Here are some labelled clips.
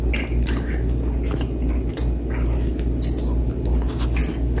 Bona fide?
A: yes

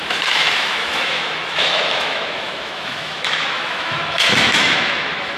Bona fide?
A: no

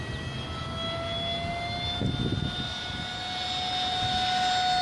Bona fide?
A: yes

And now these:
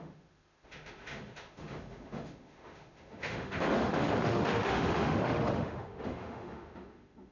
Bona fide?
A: no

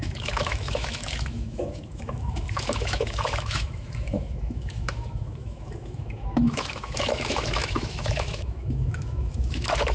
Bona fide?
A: no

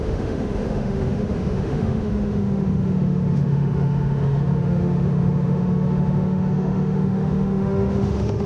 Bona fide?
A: no